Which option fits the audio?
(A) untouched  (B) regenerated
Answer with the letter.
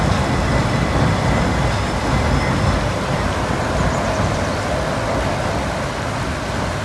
A